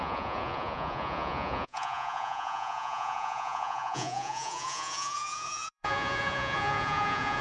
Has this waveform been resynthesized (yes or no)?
yes